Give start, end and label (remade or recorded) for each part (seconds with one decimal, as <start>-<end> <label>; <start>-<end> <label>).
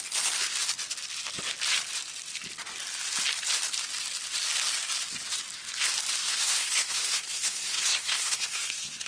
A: 0.0-6.2 recorded; 6.2-9.1 remade